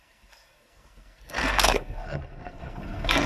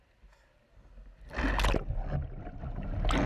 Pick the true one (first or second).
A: second